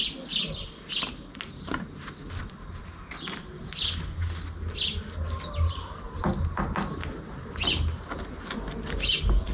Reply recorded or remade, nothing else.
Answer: recorded